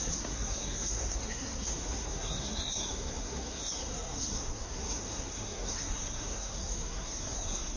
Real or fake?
fake